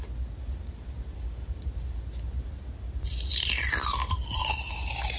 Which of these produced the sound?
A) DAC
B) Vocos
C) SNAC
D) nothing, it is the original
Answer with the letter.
D